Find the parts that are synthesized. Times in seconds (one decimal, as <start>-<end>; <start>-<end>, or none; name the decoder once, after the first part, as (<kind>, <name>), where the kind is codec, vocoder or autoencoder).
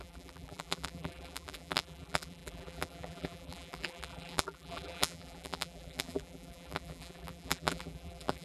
0.0-8.4 (vocoder, BigVGAN v2)